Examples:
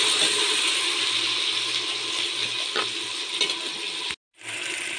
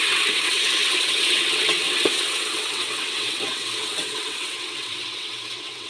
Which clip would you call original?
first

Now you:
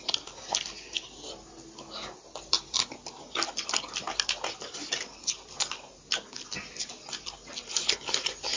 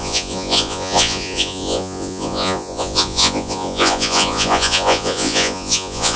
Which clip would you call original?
first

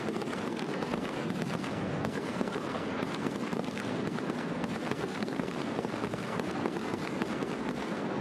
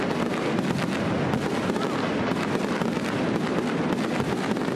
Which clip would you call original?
second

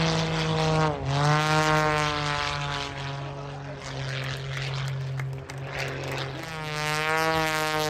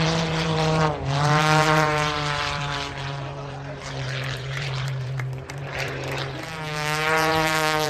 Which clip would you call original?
first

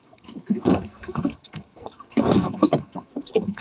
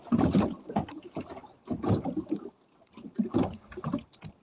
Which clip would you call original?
second